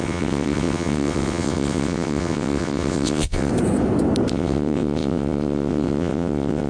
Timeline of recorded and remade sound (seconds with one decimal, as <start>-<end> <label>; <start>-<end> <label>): 0.0-3.5 remade; 3.5-4.3 recorded; 4.3-6.7 remade